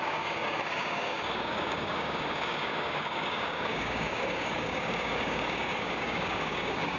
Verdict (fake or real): fake